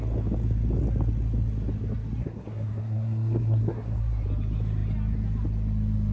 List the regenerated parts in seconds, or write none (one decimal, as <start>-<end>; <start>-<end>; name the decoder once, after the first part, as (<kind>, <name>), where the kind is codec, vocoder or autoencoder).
2.2-4.0 (codec, SNAC)